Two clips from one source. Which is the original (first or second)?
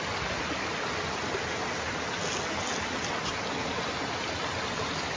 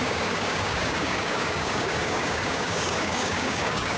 first